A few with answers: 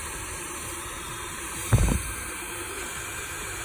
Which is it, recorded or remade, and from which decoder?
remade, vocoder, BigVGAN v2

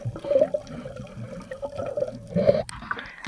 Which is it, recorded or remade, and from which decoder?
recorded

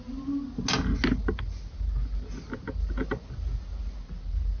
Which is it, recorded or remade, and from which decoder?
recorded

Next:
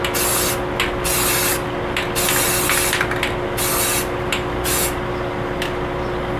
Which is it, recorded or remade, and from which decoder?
recorded